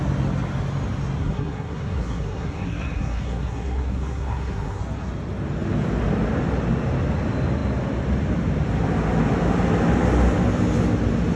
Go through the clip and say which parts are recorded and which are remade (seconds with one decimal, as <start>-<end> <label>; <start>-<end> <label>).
0.0-1.2 recorded; 1.2-4.8 remade; 4.8-11.4 recorded